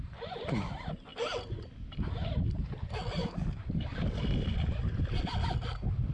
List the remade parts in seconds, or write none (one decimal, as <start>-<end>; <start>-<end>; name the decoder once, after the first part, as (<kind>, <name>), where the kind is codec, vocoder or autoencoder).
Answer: 3.2-4.2 (codec, DAC)